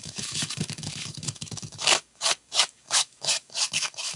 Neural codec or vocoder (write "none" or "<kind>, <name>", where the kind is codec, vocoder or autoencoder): codec, DAC